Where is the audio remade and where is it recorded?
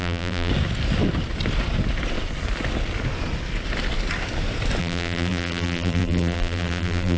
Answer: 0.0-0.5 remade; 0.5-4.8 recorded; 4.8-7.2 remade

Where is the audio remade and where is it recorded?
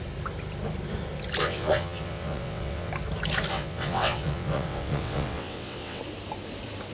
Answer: 0.0-1.4 recorded; 1.4-2.9 remade; 2.9-3.5 recorded; 3.5-6.0 remade; 6.0-6.9 recorded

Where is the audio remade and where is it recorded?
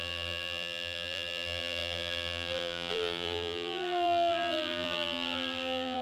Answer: 0.0-6.0 remade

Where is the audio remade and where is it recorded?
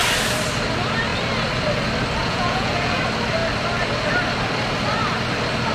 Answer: 0.0-2.2 recorded; 2.2-3.0 remade; 3.0-5.7 recorded